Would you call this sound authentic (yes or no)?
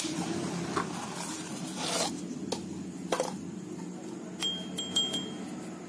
yes